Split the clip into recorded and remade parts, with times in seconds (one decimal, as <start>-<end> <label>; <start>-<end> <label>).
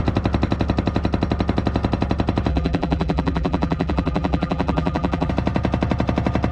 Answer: 0.0-2.5 recorded; 2.5-5.3 remade; 5.3-6.5 recorded